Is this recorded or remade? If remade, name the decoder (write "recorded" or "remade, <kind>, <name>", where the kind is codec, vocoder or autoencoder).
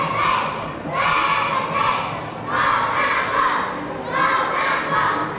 recorded